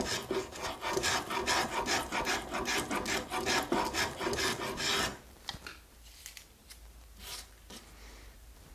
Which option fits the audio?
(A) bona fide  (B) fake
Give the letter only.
A